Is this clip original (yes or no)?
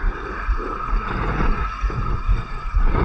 no